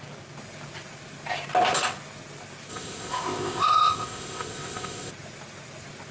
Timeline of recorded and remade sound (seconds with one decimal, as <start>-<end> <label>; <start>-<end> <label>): 0.0-2.7 recorded; 2.7-5.1 remade; 5.1-6.1 recorded